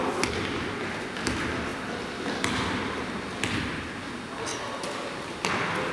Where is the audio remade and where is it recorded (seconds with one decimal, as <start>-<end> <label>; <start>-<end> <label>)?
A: 0.0-5.9 recorded